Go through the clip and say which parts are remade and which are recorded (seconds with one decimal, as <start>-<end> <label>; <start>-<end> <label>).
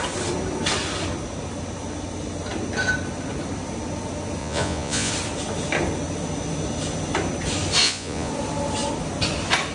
0.0-4.4 recorded; 4.4-5.1 remade; 5.1-7.8 recorded; 7.8-8.3 remade; 8.3-9.7 recorded